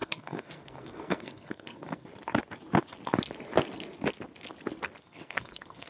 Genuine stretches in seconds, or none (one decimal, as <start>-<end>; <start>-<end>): 2.1-5.0